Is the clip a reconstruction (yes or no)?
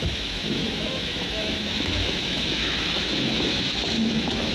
yes